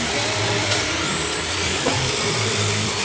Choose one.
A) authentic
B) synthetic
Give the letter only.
B